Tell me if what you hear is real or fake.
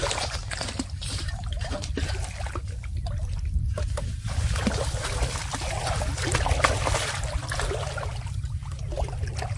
real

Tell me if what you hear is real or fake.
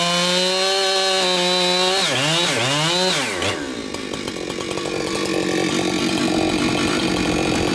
real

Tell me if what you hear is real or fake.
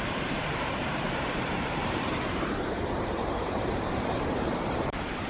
fake